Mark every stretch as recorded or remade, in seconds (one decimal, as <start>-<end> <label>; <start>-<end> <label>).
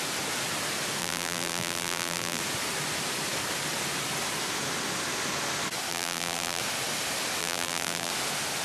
0.0-1.0 recorded; 1.0-2.4 remade; 2.4-5.9 recorded; 5.9-6.6 remade; 6.6-7.4 recorded; 7.4-8.1 remade; 8.1-8.6 recorded